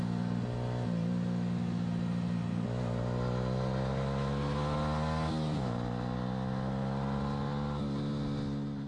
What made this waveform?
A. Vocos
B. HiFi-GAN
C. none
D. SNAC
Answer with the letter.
C